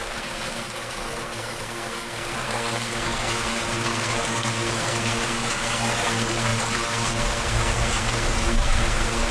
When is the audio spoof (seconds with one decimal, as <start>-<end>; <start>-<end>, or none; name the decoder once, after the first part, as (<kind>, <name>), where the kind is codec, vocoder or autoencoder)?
0.0-9.3 (codec, SNAC)